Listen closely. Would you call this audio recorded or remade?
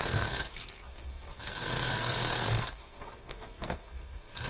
remade